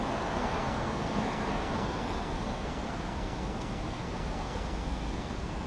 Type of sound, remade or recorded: remade